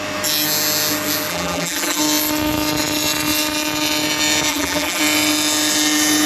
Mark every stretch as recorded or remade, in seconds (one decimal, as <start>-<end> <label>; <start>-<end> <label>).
0.0-1.3 recorded; 1.3-2.0 remade; 2.0-4.5 recorded; 4.5-5.0 remade; 5.0-6.3 recorded